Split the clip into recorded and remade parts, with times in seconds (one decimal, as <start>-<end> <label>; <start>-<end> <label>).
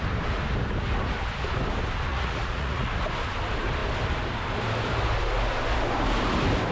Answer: 0.0-2.1 recorded; 2.1-2.9 remade; 2.9-6.7 recorded